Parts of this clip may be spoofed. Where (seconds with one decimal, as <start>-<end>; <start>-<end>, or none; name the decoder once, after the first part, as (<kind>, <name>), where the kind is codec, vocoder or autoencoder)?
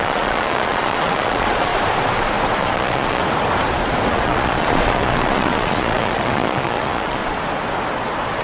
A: 0.0-1.7 (vocoder, Vocos); 2.6-3.2; 4.1-7.2